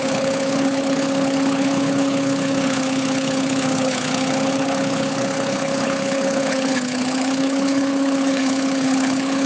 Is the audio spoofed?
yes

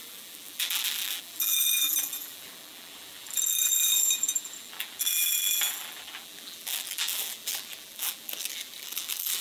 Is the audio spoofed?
yes